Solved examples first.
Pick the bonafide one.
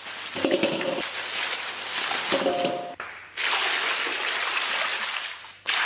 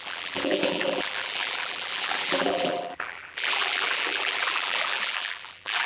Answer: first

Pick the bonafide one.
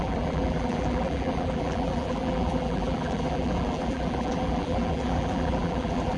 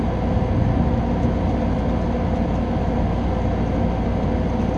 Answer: second